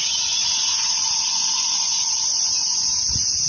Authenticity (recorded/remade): remade